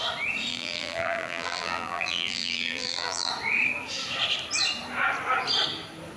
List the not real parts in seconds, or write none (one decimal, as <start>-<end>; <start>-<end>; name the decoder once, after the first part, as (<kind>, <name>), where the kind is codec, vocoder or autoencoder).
0.5-3.3 (vocoder, BigVGAN v2)